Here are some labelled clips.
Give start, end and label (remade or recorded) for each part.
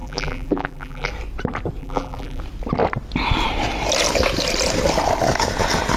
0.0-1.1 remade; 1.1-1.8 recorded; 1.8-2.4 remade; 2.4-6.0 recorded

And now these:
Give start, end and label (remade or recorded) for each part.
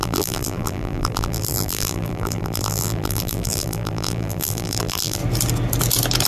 0.0-5.2 remade; 5.2-6.3 recorded